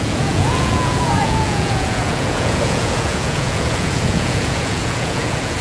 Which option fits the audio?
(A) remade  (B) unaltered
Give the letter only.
A